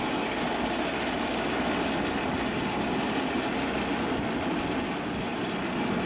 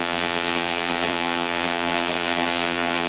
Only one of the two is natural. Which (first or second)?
first